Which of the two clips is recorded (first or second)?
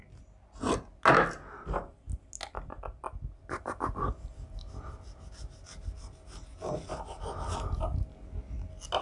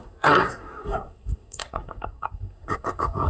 first